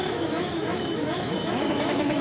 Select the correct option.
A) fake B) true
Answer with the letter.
A